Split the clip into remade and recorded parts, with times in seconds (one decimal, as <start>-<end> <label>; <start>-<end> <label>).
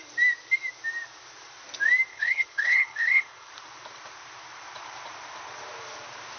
0.0-2.1 recorded; 2.1-3.5 remade; 3.5-6.4 recorded